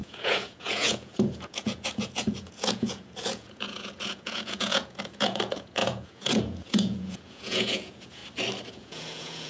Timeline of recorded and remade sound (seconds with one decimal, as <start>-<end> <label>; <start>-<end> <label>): 0.0-8.2 remade; 8.2-8.7 recorded; 8.7-9.5 remade